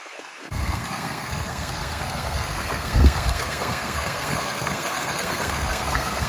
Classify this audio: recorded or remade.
remade